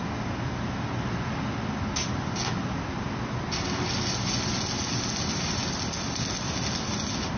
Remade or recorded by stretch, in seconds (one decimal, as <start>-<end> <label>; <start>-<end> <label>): 0.0-7.4 recorded